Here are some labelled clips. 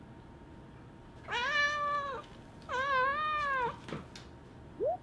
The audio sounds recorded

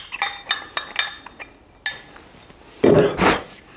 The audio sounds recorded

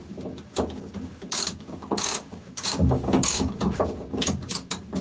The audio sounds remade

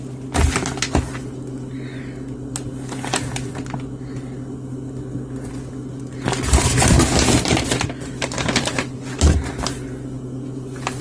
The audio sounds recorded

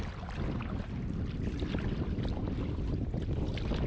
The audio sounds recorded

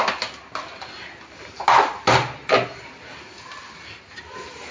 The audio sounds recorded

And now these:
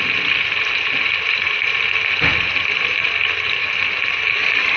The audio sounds recorded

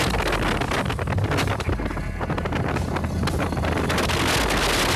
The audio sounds recorded